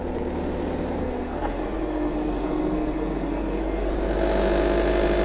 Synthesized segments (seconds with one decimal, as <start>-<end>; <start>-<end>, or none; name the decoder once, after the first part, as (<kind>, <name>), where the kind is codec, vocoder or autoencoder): 1.0-3.9 (codec, SNAC)